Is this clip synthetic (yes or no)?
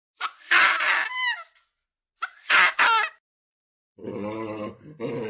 no